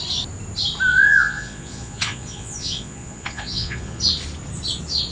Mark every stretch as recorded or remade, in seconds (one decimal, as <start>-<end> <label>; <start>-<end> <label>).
0.0-0.9 recorded; 0.9-4.0 remade; 4.0-5.1 recorded